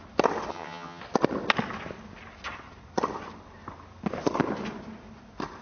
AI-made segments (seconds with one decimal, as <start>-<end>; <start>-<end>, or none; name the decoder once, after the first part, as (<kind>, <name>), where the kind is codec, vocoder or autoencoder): 0.5-1.0 (vocoder, HiFi-GAN)